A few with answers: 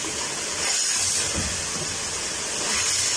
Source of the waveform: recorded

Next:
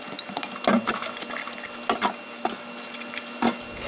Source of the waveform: recorded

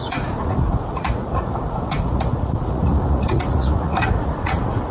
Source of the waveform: remade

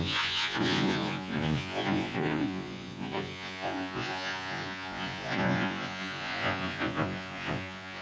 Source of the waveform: remade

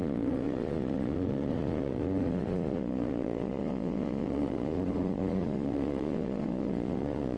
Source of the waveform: remade